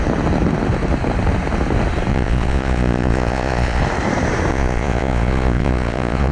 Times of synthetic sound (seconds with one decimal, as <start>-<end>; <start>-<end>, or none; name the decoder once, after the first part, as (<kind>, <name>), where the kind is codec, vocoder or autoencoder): 2.1-3.8 (vocoder, Vocos); 4.5-6.3

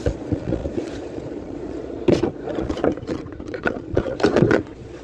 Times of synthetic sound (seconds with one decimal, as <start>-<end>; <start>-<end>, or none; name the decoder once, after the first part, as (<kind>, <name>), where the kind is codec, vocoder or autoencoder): 0.0-5.0 (vocoder, Vocos)

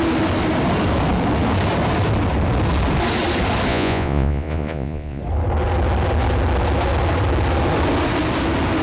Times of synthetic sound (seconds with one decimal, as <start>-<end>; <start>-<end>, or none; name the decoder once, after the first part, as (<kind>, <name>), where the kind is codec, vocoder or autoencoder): 3.7-5.2 (vocoder, Vocos)